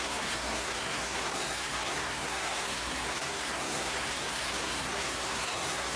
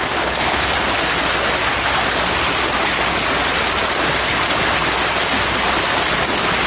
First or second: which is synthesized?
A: first